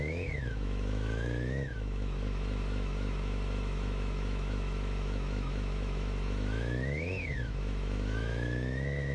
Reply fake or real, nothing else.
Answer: fake